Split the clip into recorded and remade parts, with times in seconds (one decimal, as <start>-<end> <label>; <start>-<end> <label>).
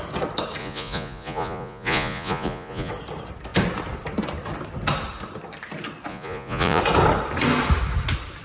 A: 0.0-0.6 recorded; 0.6-2.9 remade; 2.9-6.1 recorded; 6.1-6.8 remade; 6.8-8.4 recorded